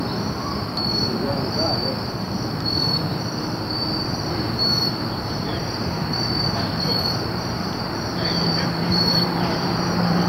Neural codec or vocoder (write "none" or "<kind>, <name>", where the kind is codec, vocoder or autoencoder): vocoder, BigVGAN v2